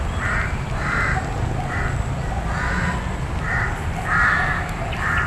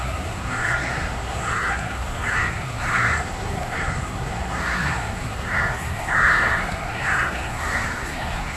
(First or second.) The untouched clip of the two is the first